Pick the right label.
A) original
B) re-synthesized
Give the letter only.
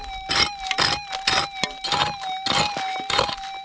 A